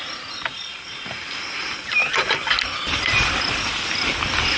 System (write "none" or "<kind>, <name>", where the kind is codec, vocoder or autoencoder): none